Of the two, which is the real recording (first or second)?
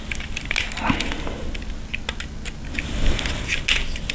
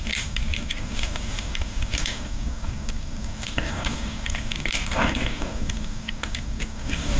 first